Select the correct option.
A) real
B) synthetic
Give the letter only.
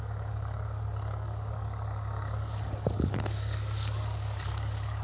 B